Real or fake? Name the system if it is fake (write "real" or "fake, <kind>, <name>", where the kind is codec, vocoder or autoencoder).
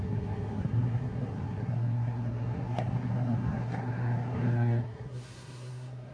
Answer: fake, codec, SNAC